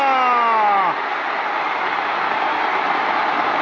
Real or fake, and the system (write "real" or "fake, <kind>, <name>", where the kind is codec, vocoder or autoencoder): real